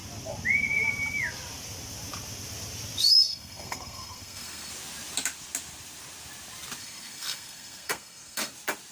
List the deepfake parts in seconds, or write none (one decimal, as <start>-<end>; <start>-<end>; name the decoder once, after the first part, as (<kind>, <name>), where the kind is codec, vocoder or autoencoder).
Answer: 3.3-4.7 (codec, SNAC); 6.8-8.5